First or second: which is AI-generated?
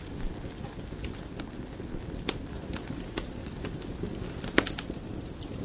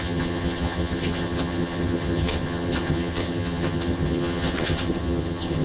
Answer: second